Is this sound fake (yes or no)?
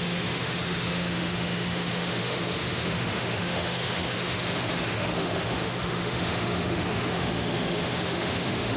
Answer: yes